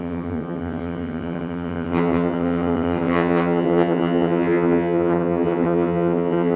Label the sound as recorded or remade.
remade